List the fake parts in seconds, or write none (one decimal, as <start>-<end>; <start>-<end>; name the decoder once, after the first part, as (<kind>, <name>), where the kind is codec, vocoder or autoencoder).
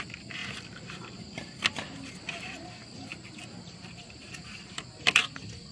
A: 0.4-1.2 (vocoder, BigVGAN v2); 3.1-4.3